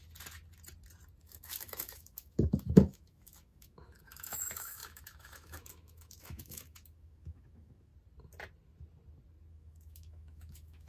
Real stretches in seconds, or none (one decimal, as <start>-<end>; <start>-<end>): 0.0-1.2; 7.9-9.5